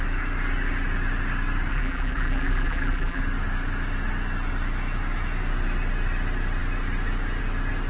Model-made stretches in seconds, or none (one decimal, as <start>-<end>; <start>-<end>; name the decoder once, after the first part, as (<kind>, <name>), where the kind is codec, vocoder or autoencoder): 1.7-3.2 (vocoder, BigVGAN v2)